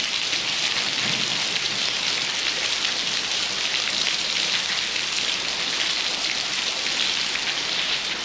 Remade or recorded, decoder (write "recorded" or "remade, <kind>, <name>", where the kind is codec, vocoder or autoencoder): recorded